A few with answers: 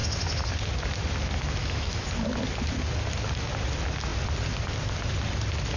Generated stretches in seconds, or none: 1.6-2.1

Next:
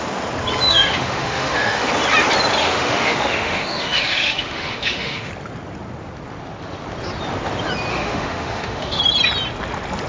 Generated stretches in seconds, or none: 0.7-1.9; 2.6-5.3; 7.9-9.0

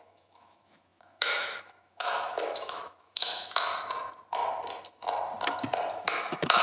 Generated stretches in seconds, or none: 0.0-3.7; 5.9-6.6

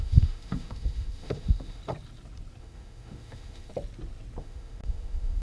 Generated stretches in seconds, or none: 0.0-1.8; 2.6-3.7; 4.4-5.4

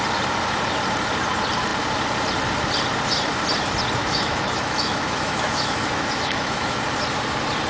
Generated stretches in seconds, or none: 4.0-6.8

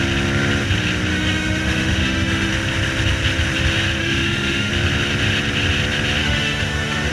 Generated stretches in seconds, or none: 1.1-2.5; 4.0-4.7; 6.2-7.1

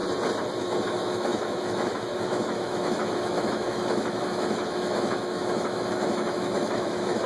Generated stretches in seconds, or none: 0.6-7.3

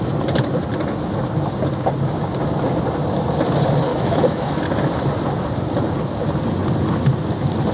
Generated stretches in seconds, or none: 3.9-4.6